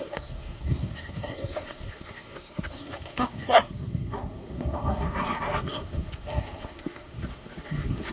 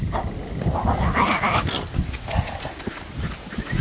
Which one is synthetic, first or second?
first